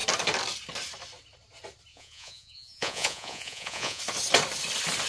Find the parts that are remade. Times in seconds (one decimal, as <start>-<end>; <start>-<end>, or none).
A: 1.9-4.0